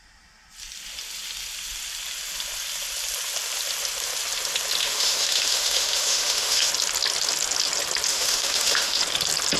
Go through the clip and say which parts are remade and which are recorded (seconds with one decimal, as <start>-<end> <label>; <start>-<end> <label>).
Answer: 0.0-4.8 recorded; 4.8-6.7 remade; 6.7-8.1 recorded; 8.1-9.0 remade; 9.0-9.6 recorded